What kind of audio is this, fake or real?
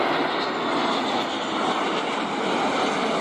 real